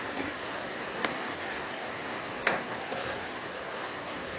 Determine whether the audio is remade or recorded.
remade